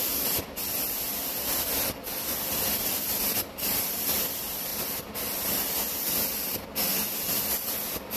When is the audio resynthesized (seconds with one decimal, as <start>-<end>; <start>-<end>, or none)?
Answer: none